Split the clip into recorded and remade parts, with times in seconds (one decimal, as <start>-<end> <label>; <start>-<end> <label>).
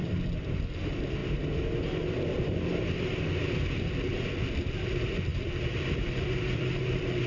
0.0-1.2 remade; 1.2-3.3 recorded; 3.3-7.3 remade